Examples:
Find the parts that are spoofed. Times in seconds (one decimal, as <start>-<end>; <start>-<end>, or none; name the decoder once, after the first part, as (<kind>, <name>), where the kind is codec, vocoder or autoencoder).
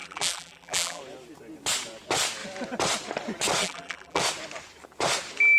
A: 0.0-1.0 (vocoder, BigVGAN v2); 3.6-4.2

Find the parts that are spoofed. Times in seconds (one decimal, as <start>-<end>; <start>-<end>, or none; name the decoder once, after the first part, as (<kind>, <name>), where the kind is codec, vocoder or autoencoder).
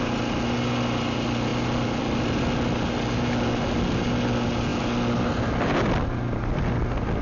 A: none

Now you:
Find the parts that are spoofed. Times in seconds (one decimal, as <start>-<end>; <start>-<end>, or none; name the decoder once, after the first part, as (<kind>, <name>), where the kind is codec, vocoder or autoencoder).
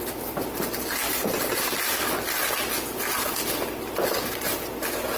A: none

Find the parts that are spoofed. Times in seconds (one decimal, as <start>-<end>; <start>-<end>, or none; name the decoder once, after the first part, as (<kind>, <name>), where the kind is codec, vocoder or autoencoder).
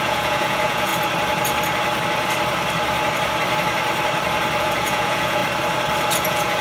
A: 0.0-0.9 (vocoder, Vocos); 4.6-5.4; 6.1-6.6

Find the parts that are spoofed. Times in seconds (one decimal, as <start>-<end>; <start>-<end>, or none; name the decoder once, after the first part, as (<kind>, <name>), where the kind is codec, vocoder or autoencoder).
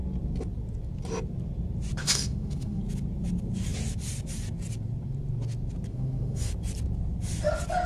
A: 2.0-2.8 (autoencoder, DAC-VAE); 5.9-6.5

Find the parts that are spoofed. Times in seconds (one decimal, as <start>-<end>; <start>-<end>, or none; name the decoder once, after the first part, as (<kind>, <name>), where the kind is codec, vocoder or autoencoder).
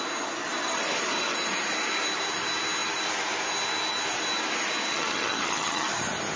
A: 4.9-5.9 (vocoder, HiFi-GAN)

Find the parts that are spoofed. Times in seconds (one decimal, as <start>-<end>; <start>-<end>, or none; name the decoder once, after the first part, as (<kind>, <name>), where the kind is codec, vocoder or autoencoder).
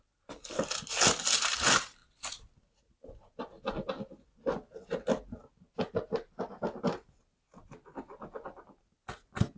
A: none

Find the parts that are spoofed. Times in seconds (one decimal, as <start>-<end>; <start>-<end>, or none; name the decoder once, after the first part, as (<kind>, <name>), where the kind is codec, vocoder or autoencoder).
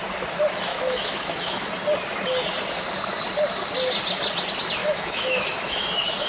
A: 0.7-1.7 (autoencoder, DAC-VAE); 4.8-6.3